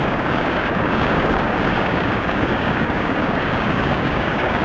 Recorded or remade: remade